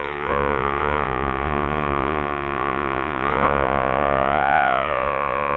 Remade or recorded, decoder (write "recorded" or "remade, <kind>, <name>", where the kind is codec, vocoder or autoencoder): remade, vocoder, Vocos